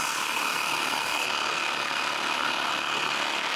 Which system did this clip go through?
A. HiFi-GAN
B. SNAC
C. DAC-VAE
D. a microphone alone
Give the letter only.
B